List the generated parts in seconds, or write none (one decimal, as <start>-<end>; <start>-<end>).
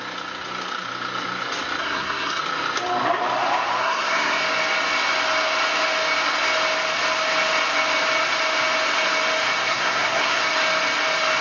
1.8-2.4; 3.8-4.4; 9.7-10.4